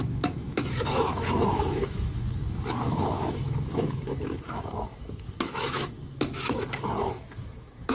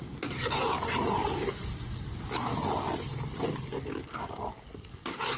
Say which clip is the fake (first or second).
first